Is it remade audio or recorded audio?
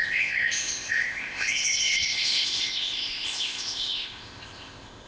remade